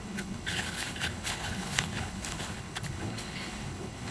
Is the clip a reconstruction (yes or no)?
yes